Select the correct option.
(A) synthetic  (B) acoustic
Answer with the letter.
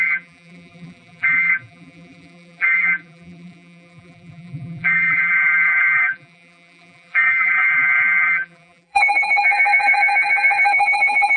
A